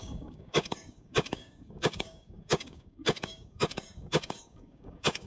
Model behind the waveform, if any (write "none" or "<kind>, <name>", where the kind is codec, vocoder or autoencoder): codec, DAC